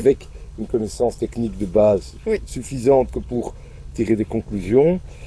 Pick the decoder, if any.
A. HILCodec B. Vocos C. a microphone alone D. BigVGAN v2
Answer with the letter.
A